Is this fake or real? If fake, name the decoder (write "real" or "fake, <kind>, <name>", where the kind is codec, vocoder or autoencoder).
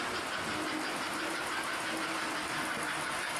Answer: real